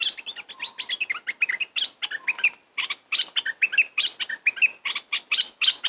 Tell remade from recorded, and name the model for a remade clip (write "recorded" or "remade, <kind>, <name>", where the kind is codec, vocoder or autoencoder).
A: recorded